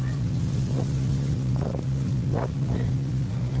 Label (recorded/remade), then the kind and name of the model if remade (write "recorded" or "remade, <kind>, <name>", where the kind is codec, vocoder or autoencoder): remade, vocoder, Vocos